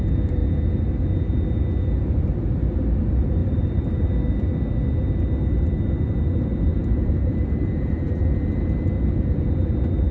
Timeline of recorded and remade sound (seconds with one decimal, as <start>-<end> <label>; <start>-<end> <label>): 0.0-3.4 recorded; 3.4-4.1 remade; 4.1-6.7 recorded; 6.7-8.3 remade; 8.3-10.1 recorded